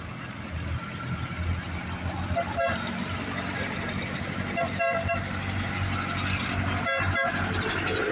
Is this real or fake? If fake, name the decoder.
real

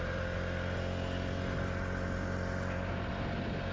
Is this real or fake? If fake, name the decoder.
real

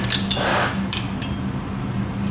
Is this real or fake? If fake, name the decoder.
real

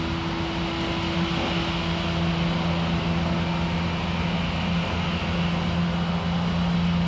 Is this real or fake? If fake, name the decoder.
real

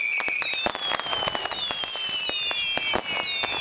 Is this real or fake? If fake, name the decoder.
real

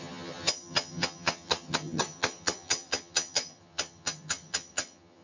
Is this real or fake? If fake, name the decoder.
fake, vocoder, HiFi-GAN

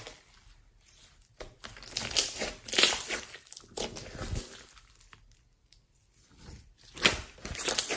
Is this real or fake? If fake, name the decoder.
real